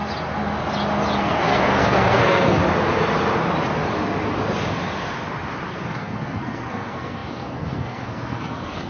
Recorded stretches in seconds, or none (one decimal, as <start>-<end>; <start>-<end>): 0.0-1.2; 2.6-5.7